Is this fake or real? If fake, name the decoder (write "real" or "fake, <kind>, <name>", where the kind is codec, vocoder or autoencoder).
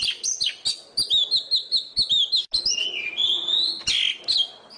real